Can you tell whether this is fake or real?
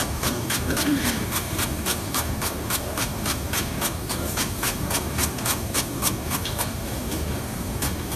fake